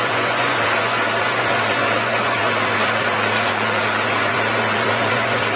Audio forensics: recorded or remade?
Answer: remade